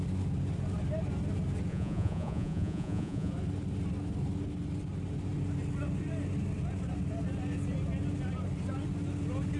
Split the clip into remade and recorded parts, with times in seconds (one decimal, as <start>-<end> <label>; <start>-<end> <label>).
0.0-1.7 recorded; 1.7-3.3 remade; 3.3-9.6 recorded

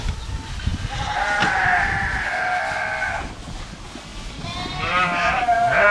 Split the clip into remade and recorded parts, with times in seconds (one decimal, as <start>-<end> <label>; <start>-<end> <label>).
0.0-5.9 recorded